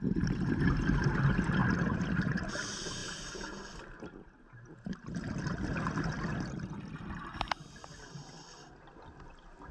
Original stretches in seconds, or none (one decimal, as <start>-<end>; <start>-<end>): 0.0-9.7